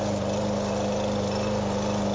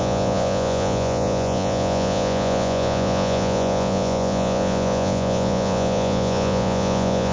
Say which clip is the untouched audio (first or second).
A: first